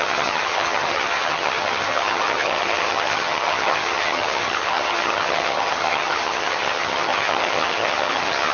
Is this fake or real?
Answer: fake